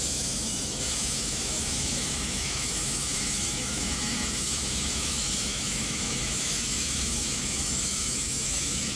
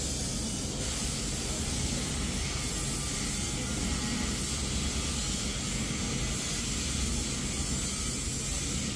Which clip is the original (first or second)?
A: second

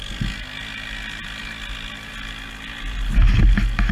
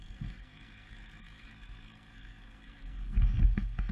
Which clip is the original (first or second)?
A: first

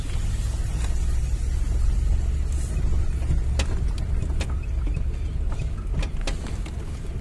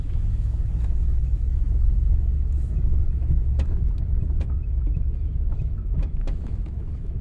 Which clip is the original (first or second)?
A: first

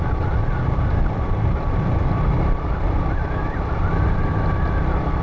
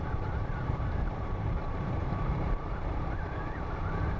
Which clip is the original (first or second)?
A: first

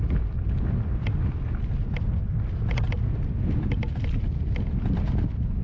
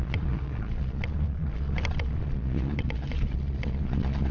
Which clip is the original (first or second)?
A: first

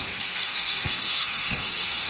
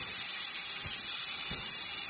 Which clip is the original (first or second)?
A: second